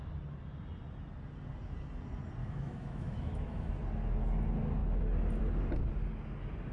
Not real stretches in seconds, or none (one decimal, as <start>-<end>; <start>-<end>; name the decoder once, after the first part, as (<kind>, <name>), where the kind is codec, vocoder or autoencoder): 2.4-3.7 (autoencoder, DAC-VAE)